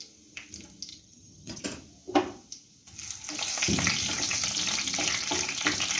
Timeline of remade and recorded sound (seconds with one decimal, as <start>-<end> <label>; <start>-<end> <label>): 0.0-0.9 recorded; 0.9-1.6 remade; 1.6-6.0 recorded